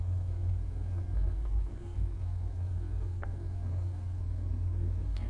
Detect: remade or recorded remade